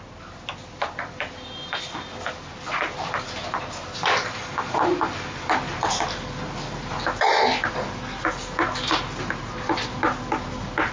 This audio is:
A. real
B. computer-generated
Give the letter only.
A